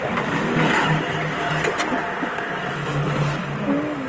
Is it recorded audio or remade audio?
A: recorded